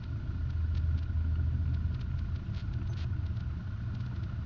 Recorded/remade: recorded